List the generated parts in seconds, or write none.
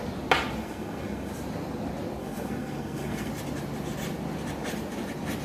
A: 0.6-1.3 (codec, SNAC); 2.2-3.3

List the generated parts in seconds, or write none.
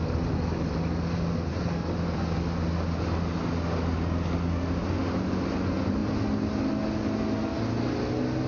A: none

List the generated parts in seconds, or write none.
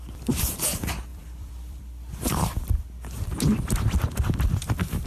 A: 1.1-1.8 (vocoder, BigVGAN v2)